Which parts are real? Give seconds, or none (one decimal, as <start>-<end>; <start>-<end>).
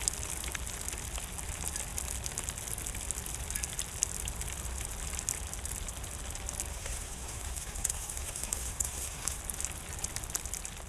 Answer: 0.0-6.7; 9.4-10.9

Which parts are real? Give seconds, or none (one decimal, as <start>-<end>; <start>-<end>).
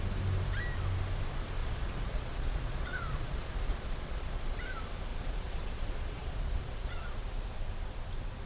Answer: 0.0-1.6; 4.4-5.1; 7.1-8.5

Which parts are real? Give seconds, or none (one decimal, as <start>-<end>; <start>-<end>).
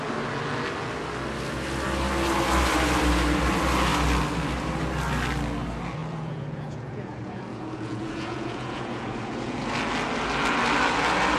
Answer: 0.0-6.0; 9.7-11.4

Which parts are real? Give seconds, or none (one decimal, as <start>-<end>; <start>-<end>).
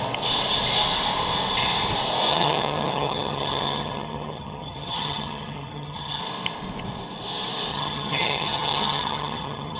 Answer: 0.0-2.3; 6.2-7.7